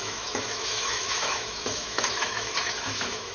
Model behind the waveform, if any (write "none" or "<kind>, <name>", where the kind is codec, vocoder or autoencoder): autoencoder, DAC-VAE